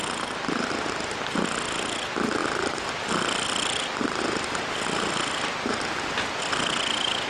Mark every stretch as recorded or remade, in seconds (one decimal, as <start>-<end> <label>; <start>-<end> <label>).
0.0-2.4 recorded; 2.4-4.2 remade; 4.2-7.3 recorded